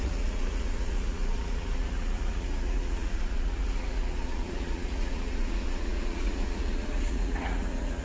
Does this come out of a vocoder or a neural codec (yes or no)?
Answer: yes